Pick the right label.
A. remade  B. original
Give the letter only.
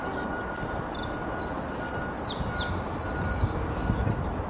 B